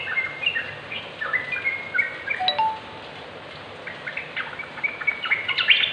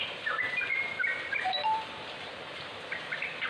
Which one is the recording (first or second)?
first